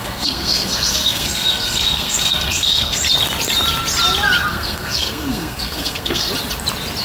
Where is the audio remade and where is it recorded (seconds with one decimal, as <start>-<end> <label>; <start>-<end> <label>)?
0.0-3.0 remade; 3.0-4.5 recorded; 4.5-6.3 remade; 6.3-7.0 recorded